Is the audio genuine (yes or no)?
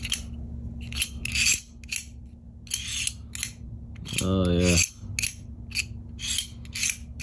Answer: yes